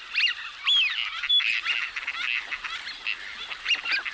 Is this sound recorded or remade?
recorded